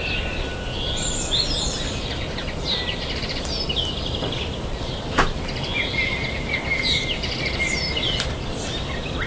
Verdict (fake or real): real